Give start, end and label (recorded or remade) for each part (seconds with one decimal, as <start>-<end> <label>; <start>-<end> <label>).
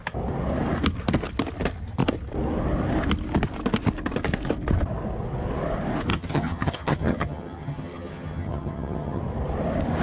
0.0-6.1 recorded; 6.1-9.2 remade; 9.2-10.0 recorded